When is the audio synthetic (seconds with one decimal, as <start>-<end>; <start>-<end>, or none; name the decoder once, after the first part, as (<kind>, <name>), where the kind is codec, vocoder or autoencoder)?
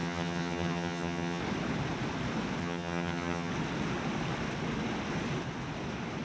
0.0-1.4 (vocoder, HiFi-GAN); 2.6-3.5